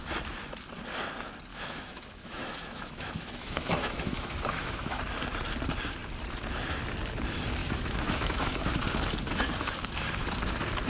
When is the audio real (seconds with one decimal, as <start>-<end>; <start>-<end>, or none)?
0.0-1.5; 5.0-7.6; 8.7-10.9